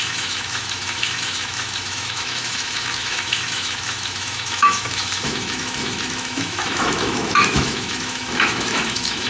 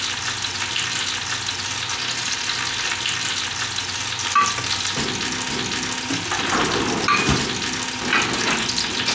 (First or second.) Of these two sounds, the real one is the second